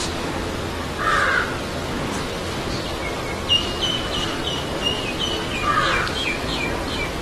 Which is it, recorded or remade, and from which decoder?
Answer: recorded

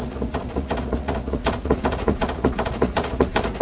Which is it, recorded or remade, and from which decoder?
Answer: remade, vocoder, Vocos